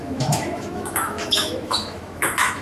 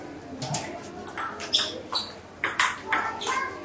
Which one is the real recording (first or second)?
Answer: second